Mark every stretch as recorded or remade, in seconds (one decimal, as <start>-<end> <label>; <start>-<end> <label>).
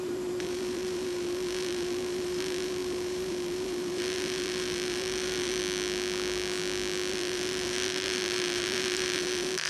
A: 0.0-5.6 remade; 5.6-7.1 recorded; 7.1-9.7 remade